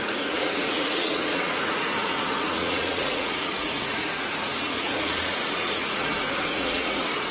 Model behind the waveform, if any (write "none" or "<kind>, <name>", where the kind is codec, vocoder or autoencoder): vocoder, Vocos